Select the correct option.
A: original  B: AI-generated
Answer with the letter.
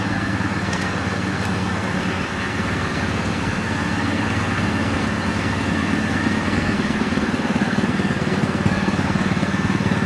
B